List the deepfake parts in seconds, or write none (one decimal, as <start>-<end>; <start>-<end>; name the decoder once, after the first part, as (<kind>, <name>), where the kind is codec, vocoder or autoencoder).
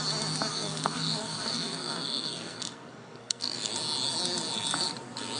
0.5-3.7 (codec, SNAC)